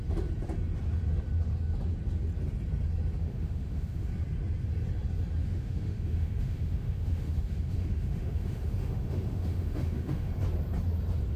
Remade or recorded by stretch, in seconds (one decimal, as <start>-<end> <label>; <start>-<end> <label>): 0.0-3.2 recorded; 3.2-4.1 remade; 4.1-5.4 recorded; 5.4-10.3 remade; 10.3-11.4 recorded